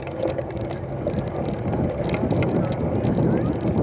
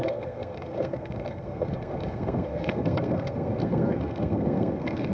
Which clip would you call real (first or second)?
first